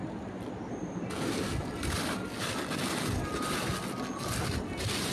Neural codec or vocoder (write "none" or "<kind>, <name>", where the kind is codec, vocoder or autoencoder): none